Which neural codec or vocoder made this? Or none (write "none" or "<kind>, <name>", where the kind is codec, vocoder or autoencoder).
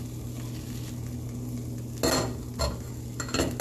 none